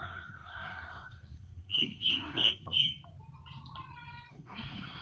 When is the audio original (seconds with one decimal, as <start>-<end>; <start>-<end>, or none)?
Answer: 2.9-4.3